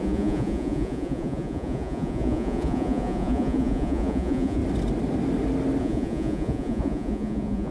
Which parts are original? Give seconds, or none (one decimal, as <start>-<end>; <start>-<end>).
4.6-5.8